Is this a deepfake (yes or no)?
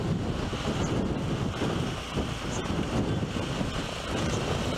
no